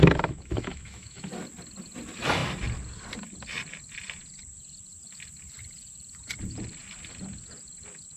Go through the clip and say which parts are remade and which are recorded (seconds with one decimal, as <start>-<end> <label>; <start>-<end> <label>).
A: 0.0-1.3 remade; 1.3-8.2 recorded